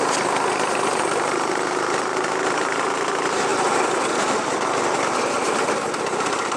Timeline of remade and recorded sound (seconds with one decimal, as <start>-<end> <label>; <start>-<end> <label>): 0.0-6.6 recorded